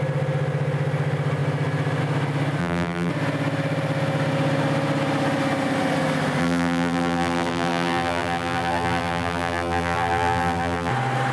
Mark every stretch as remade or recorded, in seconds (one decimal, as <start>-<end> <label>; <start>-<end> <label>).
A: 0.0-2.6 recorded; 2.6-3.1 remade; 3.1-6.4 recorded; 6.4-10.9 remade; 10.9-11.3 recorded